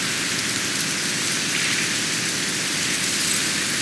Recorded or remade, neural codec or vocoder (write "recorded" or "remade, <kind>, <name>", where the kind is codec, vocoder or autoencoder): recorded